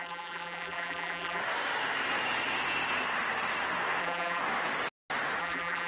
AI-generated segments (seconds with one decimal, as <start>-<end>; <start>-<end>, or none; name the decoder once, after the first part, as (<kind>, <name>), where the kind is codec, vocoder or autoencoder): 0.0-1.4 (vocoder, BigVGAN v2); 4.0-4.4; 5.4-5.9

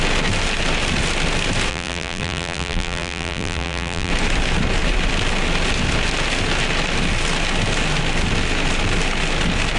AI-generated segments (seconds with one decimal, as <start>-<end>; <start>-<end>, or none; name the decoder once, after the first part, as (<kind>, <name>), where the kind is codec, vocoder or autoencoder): 1.7-4.1 (vocoder, BigVGAN v2)

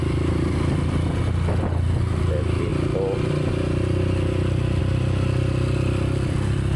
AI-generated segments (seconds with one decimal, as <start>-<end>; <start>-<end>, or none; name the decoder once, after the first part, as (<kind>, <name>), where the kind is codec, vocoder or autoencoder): none

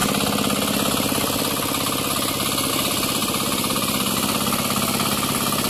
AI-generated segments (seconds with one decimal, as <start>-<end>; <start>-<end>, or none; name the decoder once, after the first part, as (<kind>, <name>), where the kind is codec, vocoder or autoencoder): 3.2-4.1 (vocoder, BigVGAN v2)

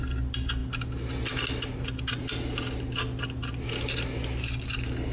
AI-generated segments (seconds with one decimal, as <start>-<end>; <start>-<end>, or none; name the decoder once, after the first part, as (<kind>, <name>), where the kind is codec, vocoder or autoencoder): none

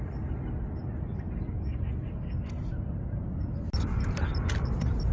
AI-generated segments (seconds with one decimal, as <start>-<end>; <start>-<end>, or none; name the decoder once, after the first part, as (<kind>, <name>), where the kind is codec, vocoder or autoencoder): none